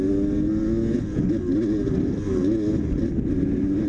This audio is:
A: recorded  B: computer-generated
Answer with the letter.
A